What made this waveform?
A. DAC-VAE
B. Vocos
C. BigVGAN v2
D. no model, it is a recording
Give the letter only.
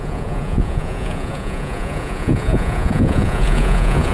B